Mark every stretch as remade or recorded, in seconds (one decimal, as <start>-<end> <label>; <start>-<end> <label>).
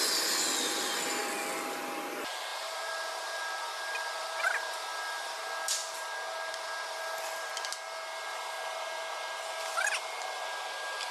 0.0-2.5 recorded; 2.5-3.4 remade; 3.4-11.1 recorded